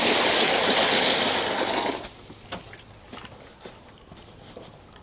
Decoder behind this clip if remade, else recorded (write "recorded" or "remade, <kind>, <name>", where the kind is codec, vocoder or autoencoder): recorded